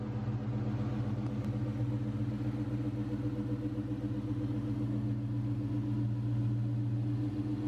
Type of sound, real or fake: real